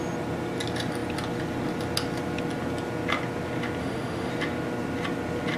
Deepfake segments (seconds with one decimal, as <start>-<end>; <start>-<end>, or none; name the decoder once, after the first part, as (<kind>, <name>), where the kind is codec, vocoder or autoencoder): 3.8-4.3 (autoencoder, DAC-VAE)